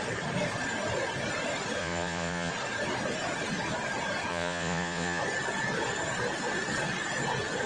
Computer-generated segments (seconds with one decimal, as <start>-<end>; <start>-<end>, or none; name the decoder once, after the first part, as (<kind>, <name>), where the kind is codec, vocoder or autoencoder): 1.8-2.5 (vocoder, Vocos); 4.3-5.2